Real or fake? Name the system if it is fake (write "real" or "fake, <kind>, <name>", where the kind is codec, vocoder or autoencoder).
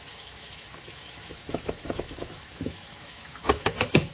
fake, autoencoder, DAC-VAE